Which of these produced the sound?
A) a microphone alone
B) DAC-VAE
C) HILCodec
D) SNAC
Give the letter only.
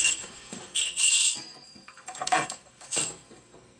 D